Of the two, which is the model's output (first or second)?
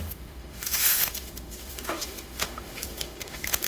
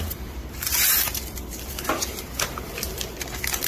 first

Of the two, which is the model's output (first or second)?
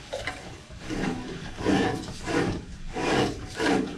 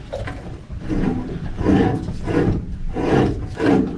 first